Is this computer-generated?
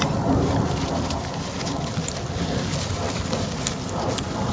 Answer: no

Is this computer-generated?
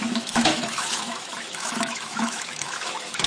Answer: yes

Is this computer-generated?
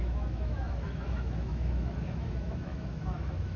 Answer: yes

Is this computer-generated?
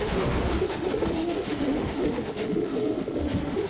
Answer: yes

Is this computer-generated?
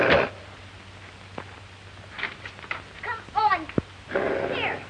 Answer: no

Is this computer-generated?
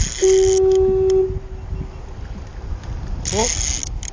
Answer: no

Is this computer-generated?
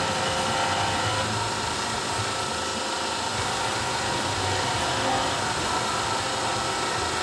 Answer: no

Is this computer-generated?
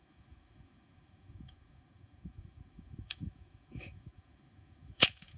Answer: yes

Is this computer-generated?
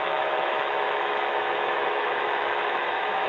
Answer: yes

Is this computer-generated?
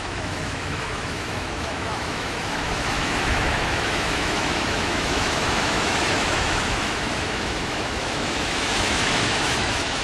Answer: yes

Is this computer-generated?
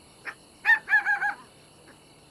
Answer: no